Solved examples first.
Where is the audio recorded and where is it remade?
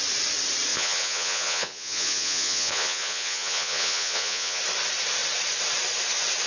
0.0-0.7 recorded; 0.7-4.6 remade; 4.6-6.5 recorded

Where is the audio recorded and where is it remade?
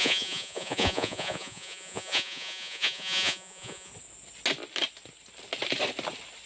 0.0-3.9 remade; 3.9-6.5 recorded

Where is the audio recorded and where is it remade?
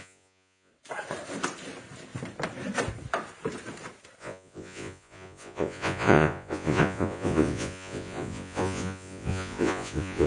0.0-0.7 remade; 0.7-4.2 recorded; 4.2-10.3 remade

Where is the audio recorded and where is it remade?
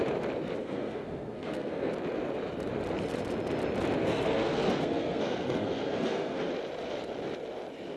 0.0-0.6 recorded; 0.6-1.9 remade; 1.9-4.0 recorded; 4.0-6.5 remade; 6.5-8.0 recorded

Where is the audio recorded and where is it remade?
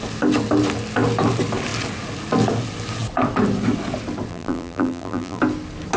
0.0-4.3 recorded; 4.3-5.4 remade; 5.4-6.0 recorded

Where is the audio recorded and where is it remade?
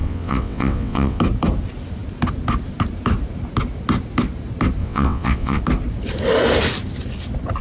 0.0-1.2 remade; 1.2-4.8 recorded; 4.8-5.6 remade; 5.6-7.6 recorded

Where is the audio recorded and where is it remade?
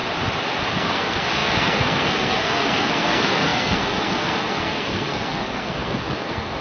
0.0-0.7 recorded; 0.7-6.6 remade